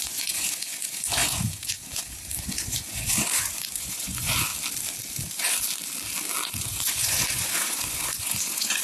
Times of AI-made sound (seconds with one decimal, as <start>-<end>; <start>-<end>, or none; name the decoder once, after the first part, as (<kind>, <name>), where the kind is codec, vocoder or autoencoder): 0.0-4.5 (vocoder, Vocos); 6.6-8.8